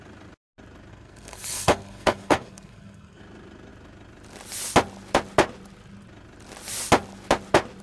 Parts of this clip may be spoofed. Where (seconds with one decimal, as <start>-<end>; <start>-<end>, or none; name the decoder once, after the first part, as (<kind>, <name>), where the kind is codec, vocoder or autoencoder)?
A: 0.9-3.2 (codec, SNAC)

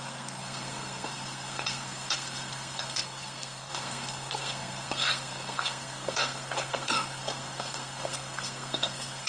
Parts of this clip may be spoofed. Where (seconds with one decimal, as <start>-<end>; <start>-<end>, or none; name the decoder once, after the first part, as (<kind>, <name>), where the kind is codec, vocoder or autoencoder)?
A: 0.0-9.3 (codec, SNAC)

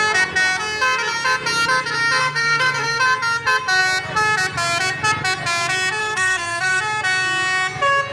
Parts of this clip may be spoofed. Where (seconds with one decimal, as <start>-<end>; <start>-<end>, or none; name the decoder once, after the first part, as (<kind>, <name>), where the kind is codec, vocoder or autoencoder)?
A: 2.2-3.0 (codec, SNAC); 6.0-6.8

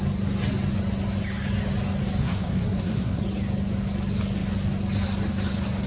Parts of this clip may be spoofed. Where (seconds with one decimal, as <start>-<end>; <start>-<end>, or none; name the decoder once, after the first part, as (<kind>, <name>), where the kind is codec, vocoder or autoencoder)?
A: 2.2-3.2 (codec, SNAC)

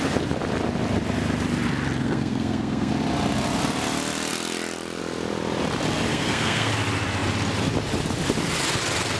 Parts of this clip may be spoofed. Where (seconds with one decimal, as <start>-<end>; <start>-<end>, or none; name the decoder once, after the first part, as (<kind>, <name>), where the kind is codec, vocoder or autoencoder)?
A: 2.0-2.9 (codec, SNAC); 6.1-6.7

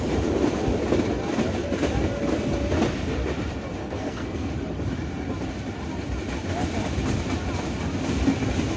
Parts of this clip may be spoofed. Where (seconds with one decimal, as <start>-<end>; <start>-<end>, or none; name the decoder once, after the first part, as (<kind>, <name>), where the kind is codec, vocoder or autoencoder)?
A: 3.8-4.5 (codec, SNAC)

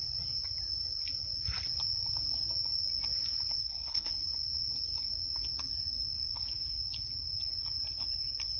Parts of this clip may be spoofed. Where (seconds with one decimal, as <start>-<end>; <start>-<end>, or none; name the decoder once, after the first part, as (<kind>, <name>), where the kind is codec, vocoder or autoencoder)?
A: 3.6-4.1 (codec, SNAC)

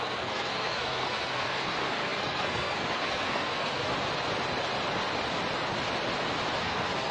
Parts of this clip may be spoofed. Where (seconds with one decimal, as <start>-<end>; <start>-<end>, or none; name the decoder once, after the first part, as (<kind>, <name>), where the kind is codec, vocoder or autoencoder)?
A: 0.0-3.9 (codec, SNAC); 6.6-7.1